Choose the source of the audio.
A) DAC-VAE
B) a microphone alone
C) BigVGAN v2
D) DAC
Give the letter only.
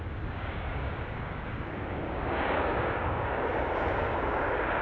D